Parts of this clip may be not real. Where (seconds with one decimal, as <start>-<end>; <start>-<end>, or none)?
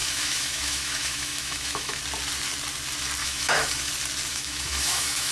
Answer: 0.0-2.0; 3.2-3.9; 4.3-5.3